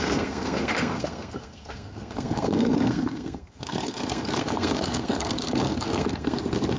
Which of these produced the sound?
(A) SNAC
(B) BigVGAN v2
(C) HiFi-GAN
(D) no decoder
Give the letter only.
A